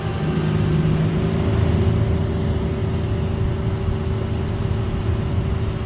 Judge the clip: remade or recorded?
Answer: recorded